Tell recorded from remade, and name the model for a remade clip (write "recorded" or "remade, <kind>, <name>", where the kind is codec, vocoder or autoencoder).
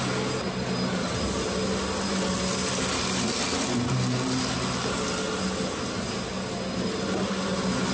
recorded